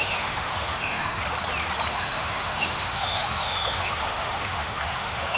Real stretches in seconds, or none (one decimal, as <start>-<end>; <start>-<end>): 1.2-1.9